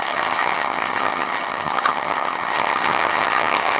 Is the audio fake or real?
fake